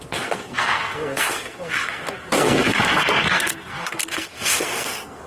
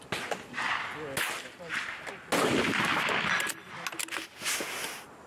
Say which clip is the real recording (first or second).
second